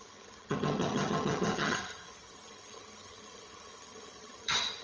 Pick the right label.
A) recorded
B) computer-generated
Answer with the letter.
B